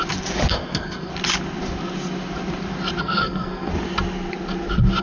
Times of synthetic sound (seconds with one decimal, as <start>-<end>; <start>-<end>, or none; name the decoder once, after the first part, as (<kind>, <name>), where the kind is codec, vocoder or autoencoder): 0.5-1.1 (codec, SNAC); 3.0-3.7